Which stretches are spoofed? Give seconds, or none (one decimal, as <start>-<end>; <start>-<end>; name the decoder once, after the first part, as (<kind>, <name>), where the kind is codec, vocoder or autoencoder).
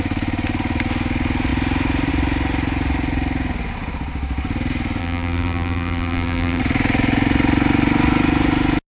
5.0-6.6 (vocoder, BigVGAN v2)